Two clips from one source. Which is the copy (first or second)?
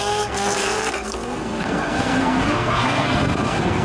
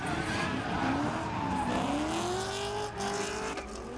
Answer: first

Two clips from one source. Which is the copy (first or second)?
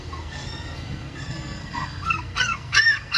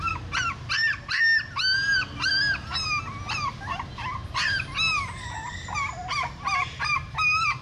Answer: first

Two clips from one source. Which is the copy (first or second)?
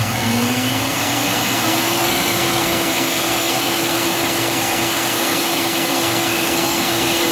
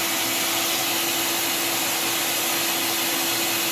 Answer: first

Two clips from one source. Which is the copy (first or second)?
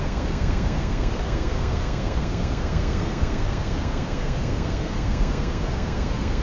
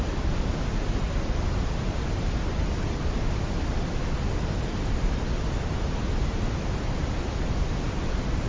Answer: first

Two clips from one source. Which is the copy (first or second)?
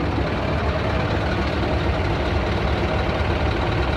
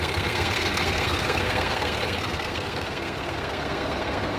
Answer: second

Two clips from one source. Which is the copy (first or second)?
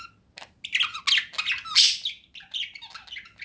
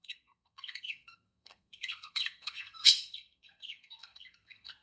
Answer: second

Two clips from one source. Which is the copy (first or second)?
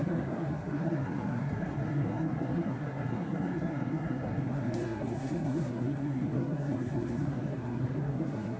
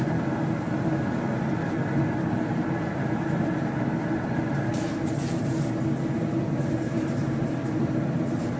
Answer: first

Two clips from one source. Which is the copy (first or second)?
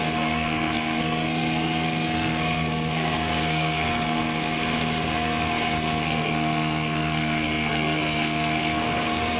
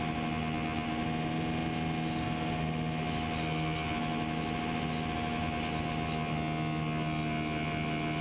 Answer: first